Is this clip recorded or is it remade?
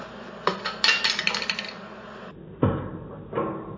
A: recorded